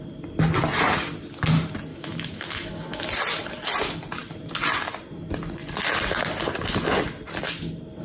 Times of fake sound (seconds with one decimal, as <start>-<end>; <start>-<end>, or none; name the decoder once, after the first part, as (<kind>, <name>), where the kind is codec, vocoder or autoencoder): 1.9-3.0 (autoencoder, DAC-VAE)